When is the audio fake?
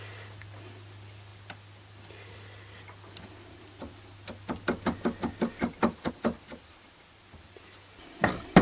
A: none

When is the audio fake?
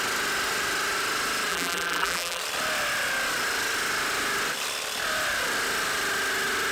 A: 1.5-2.4 (vocoder, BigVGAN v2)